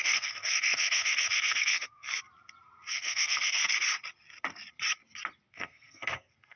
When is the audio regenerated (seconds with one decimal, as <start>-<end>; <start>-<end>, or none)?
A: 0.0-2.1; 2.9-3.6; 5.5-6.6